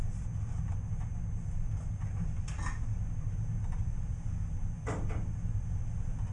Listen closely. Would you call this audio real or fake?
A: real